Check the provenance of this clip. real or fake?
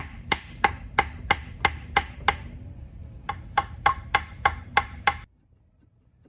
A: fake